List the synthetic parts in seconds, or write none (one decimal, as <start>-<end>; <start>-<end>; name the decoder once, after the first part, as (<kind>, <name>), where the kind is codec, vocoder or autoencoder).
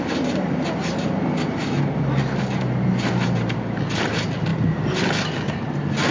none